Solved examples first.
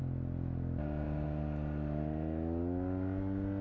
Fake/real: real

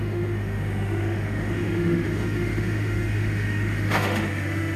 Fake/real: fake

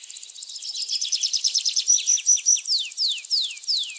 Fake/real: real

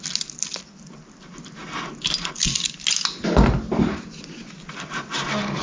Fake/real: real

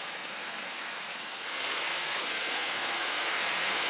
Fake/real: fake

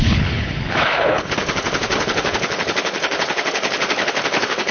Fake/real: fake